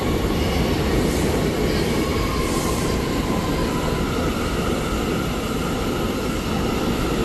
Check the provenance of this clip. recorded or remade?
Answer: recorded